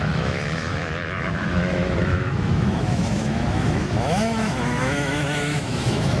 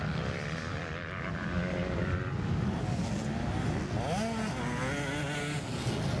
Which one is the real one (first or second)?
second